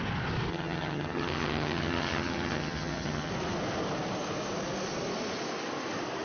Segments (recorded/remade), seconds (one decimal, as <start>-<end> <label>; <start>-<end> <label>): 0.0-0.5 recorded; 0.5-3.3 remade; 3.3-6.2 recorded